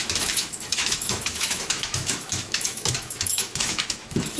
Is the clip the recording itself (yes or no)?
no